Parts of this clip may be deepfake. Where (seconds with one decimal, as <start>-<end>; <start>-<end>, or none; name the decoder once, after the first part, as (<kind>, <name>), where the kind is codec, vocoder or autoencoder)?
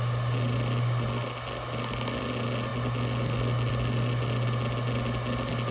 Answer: none